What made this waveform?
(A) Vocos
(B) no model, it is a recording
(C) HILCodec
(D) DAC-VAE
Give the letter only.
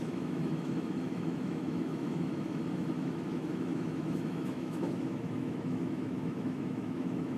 D